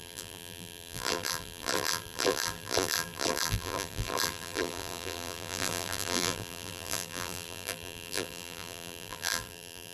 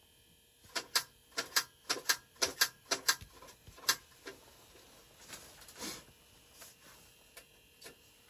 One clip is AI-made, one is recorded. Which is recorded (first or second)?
second